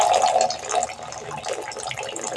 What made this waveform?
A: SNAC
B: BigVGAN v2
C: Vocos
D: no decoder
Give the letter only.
D